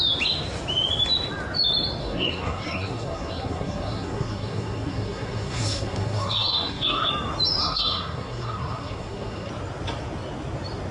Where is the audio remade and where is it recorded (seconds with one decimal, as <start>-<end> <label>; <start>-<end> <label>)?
0.0-2.0 recorded; 2.0-7.1 remade; 7.1-7.6 recorded; 7.6-9.5 remade; 9.5-10.9 recorded